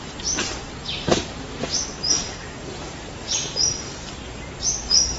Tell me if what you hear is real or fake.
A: fake